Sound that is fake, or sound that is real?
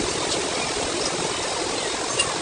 real